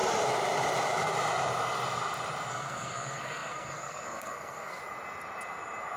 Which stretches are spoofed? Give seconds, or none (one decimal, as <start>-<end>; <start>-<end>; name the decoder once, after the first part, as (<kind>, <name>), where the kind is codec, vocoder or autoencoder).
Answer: 2.5-4.8 (codec, SNAC)